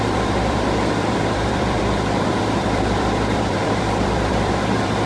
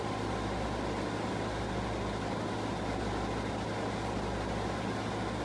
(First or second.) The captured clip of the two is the second